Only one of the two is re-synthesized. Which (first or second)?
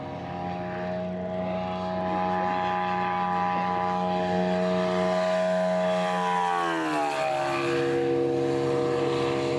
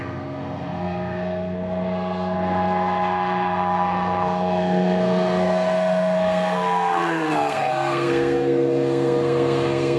second